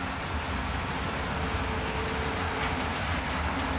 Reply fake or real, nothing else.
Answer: real